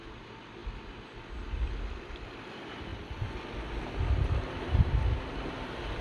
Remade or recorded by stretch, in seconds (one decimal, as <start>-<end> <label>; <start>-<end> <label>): 0.0-6.0 recorded

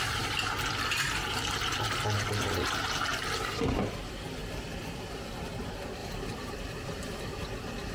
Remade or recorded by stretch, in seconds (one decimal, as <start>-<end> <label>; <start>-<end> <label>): 0.0-3.1 recorded; 3.1-3.9 remade; 3.9-4.4 recorded; 4.4-5.1 remade; 5.1-6.0 recorded; 6.0-7.2 remade; 7.2-7.9 recorded

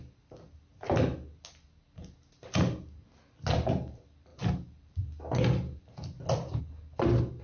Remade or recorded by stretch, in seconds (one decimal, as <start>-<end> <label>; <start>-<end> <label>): 0.0-7.4 recorded